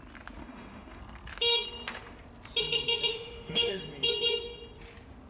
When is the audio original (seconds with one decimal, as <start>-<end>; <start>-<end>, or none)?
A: 0.0-0.4; 1.0-3.1; 3.8-5.3